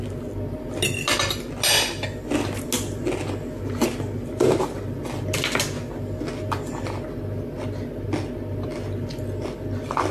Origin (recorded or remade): recorded